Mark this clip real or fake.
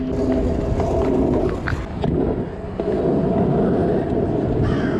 real